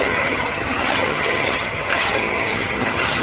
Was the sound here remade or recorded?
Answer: remade